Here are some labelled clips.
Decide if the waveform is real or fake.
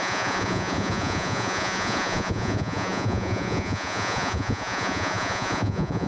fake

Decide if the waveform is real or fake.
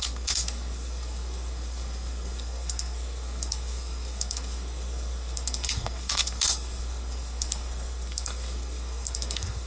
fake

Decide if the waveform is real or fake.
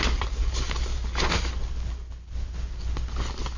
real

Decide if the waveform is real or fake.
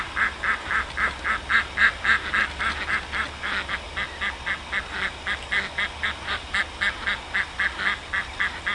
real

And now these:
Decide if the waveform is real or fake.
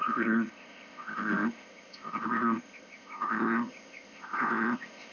fake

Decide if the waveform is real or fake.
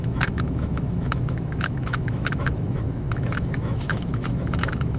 fake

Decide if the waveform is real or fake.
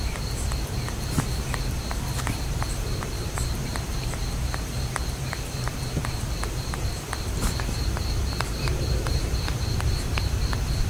fake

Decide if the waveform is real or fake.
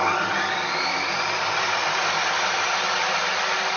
real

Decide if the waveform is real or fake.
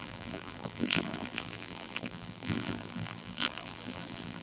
fake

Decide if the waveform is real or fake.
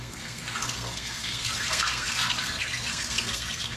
fake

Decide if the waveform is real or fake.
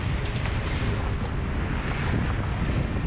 real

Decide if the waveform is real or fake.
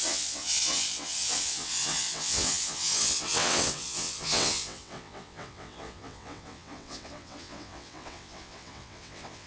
fake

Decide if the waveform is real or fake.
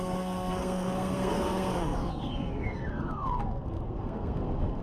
fake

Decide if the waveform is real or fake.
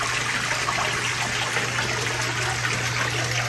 real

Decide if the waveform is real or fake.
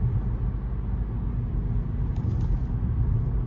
real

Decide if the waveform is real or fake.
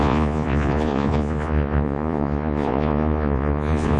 fake